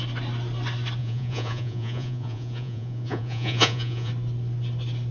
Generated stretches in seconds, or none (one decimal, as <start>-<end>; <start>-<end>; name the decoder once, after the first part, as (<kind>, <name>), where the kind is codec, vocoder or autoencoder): 1.0-4.1 (vocoder, Vocos)